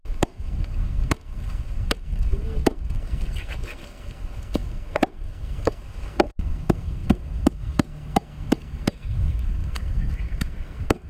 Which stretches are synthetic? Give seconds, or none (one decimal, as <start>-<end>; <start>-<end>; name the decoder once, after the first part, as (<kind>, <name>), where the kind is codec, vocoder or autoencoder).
0.0-11.1 (codec, SNAC)